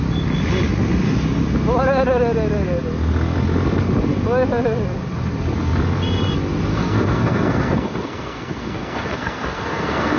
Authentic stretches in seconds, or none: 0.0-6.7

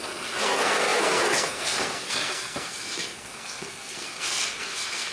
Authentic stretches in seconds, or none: none

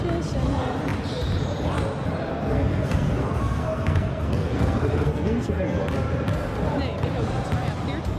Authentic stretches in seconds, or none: 0.0-2.3; 5.8-8.2

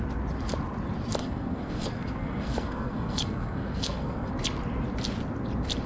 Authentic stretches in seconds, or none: 0.0-1.2; 4.3-5.9

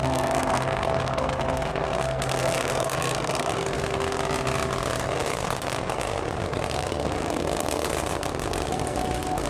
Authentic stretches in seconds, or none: 4.2-5.0

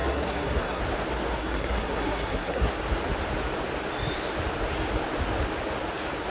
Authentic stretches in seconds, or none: 0.8-1.4; 2.7-6.3

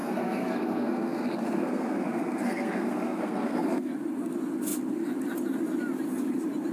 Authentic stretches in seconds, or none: 3.9-6.7

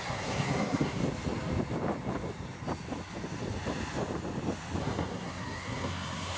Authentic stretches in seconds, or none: 1.0-4.8